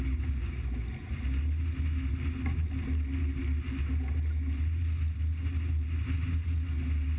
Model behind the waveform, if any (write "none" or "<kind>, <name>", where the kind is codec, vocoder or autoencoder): none